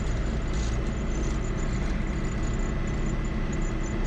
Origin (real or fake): real